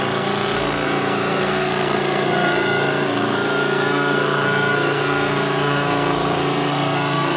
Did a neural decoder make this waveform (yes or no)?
yes